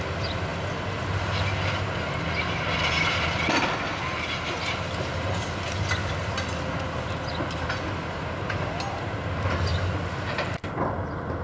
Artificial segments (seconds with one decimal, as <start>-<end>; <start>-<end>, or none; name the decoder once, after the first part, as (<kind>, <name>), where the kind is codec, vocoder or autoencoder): none